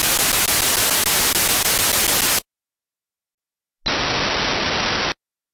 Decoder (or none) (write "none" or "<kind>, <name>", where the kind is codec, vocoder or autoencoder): none